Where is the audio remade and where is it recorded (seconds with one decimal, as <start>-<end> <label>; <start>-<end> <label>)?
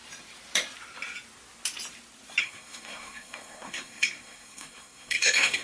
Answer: 0.0-2.4 recorded; 2.4-5.6 remade